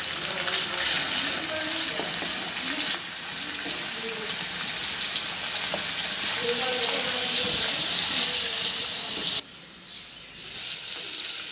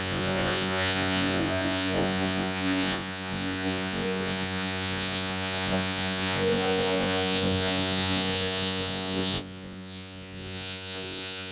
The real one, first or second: first